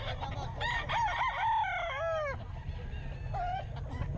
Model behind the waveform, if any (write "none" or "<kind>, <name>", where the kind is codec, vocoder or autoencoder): none